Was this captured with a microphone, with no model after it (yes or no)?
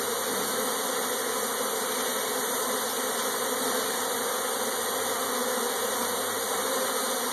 yes